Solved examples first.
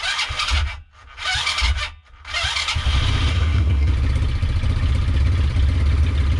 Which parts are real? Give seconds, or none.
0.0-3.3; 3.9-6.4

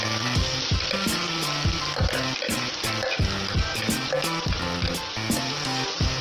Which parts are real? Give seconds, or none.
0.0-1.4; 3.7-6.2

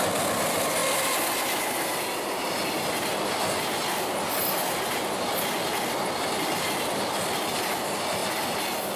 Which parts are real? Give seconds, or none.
0.0-9.0